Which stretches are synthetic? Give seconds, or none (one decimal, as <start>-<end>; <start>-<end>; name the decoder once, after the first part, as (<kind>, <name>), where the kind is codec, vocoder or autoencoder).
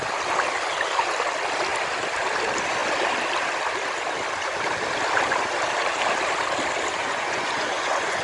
7.0-8.2 (vocoder, Vocos)